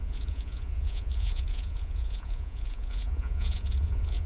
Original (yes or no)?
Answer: no